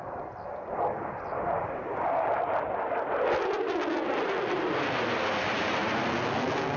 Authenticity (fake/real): real